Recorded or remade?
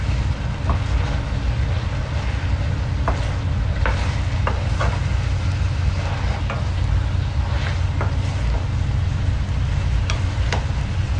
recorded